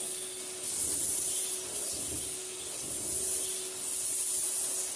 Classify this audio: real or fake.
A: real